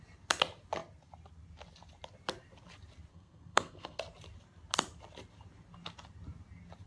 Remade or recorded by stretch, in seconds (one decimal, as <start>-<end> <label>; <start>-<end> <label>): 0.0-3.1 recorded; 3.1-4.0 remade; 4.0-6.9 recorded